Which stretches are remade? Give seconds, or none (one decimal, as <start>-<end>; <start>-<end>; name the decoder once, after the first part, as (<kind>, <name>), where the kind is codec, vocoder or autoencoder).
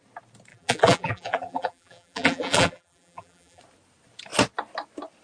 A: 0.5-3.6 (vocoder, BigVGAN v2)